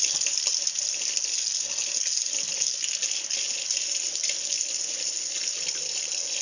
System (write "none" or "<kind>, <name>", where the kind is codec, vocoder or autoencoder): none